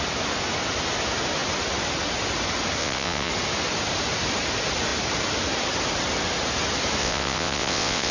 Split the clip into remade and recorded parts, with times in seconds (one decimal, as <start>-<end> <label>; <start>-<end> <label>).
0.0-2.8 recorded; 2.8-3.3 remade; 3.3-7.0 recorded; 7.0-8.1 remade